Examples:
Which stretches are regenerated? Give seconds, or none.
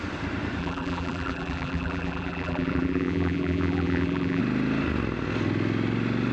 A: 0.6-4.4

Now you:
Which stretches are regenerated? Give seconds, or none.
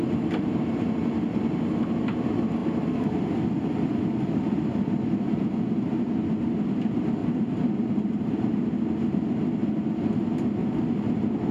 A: 7.2-8.5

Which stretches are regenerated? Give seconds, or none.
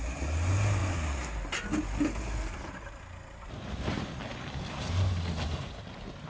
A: none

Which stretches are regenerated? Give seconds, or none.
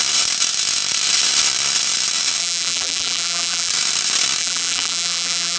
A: 2.4-3.7; 4.4-5.6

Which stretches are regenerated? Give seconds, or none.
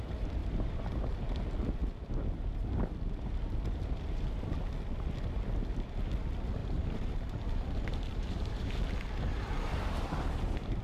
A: 0.4-1.0; 6.6-8.7; 9.3-10.8